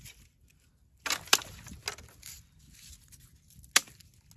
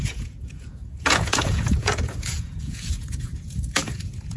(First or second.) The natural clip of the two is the first